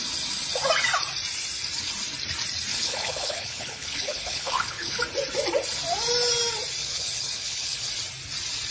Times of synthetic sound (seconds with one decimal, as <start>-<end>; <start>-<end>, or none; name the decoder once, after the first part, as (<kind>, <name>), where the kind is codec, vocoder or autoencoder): 2.7-5.0 (codec, HILCodec); 6.8-7.9